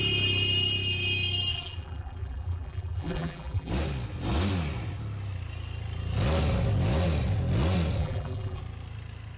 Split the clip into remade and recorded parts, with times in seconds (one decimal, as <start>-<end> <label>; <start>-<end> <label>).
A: 0.0-1.5 recorded; 1.5-3.7 remade; 3.7-8.0 recorded; 8.0-8.6 remade; 8.6-9.4 recorded